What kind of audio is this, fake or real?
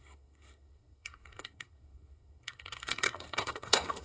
fake